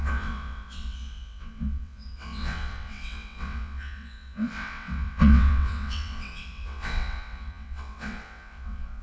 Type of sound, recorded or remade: remade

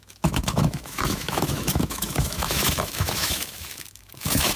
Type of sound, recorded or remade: remade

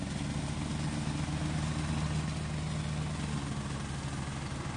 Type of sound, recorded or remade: recorded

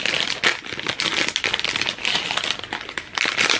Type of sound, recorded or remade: recorded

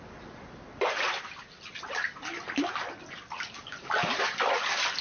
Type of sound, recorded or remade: recorded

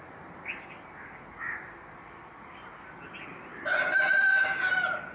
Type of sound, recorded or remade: recorded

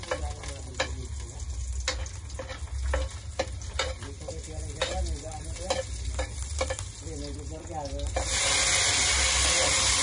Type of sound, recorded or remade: recorded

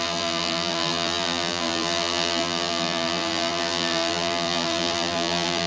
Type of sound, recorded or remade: remade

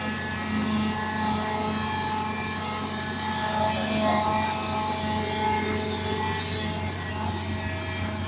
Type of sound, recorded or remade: recorded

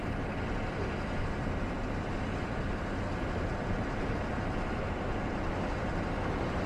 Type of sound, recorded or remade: remade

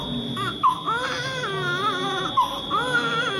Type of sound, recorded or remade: recorded